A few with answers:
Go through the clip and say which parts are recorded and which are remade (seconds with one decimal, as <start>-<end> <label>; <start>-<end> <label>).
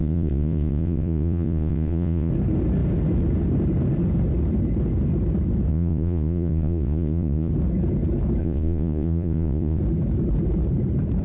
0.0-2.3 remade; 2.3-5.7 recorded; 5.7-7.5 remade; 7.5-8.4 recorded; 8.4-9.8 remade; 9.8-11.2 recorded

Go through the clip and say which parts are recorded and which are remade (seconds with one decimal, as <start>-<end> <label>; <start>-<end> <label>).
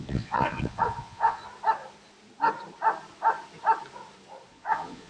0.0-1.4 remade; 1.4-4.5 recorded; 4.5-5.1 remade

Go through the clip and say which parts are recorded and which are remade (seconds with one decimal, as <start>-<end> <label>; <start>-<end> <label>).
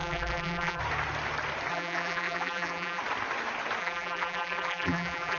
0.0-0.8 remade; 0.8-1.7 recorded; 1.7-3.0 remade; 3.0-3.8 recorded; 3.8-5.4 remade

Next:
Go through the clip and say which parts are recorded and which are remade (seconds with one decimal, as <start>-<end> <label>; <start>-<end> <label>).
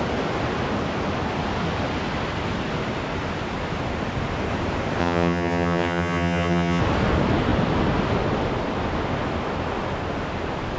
0.0-5.0 recorded; 5.0-6.8 remade; 6.8-10.8 recorded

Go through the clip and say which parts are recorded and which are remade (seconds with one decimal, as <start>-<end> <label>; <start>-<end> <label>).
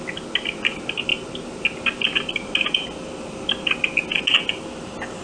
0.0-5.2 recorded